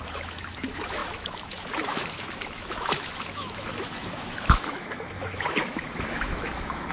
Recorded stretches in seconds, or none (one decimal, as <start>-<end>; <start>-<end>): none